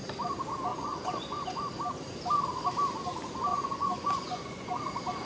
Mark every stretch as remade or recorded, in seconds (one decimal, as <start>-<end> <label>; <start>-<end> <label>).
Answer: 0.0-0.7 recorded; 0.7-1.7 remade; 1.7-3.5 recorded; 3.5-4.8 remade; 4.8-5.3 recorded